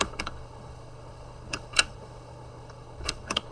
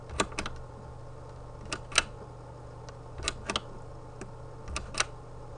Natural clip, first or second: second